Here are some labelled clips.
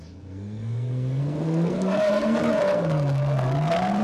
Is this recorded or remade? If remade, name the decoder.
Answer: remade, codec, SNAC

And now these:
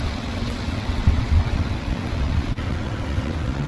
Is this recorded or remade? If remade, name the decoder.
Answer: remade, vocoder, WaveNeXt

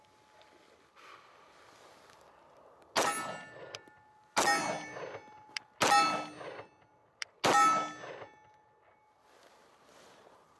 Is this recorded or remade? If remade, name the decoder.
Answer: recorded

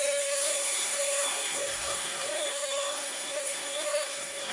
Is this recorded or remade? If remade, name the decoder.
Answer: remade, codec, SNAC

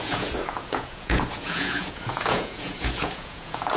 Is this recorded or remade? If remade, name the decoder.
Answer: remade, vocoder, Vocos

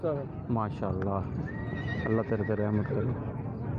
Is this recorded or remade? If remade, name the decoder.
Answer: recorded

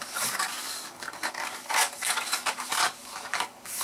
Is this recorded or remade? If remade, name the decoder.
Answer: remade, codec, DAC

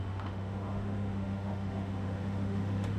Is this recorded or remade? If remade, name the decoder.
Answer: remade, autoencoder, DAC-VAE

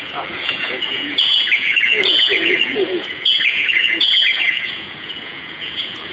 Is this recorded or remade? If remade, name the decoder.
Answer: remade, vocoder, Vocos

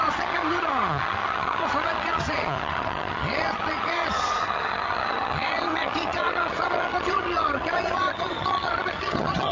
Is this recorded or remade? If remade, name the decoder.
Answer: remade, vocoder, HiFi-GAN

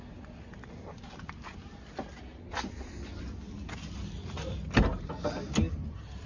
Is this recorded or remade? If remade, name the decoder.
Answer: recorded